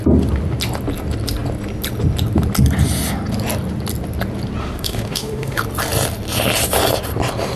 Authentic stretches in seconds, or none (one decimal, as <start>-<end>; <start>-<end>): 0.0-4.6; 5.6-7.6